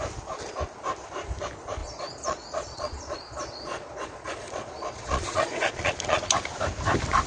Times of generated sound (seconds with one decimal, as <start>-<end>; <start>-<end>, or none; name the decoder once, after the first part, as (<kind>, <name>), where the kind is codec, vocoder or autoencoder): 1.8-6.2 (vocoder, Vocos)